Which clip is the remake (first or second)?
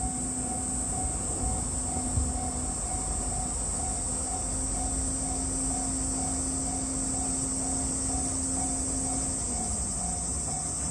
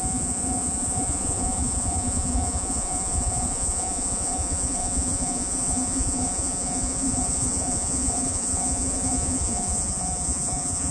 second